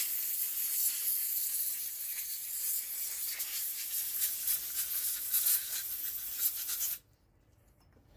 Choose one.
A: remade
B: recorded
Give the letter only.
B